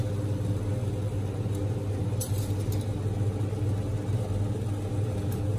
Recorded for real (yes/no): yes